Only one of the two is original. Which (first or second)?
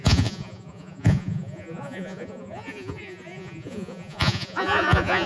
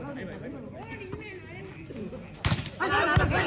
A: second